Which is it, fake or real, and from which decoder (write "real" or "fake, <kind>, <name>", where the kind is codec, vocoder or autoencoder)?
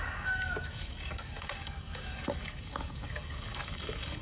fake, codec, DAC